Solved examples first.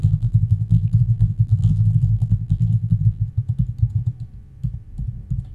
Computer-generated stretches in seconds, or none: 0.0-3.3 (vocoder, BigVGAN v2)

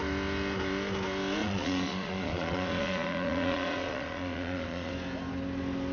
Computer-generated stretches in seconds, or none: 1.4-4.9 (vocoder, Vocos)

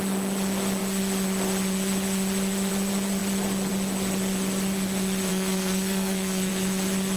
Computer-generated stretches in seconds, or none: 5.3-6.5 (codec, SNAC)

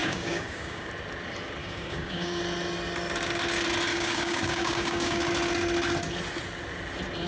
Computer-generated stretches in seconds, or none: 0.0-0.9 (codec, DAC); 1.6-2.4; 3.9-5.2

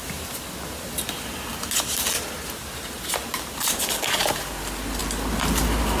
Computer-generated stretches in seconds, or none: none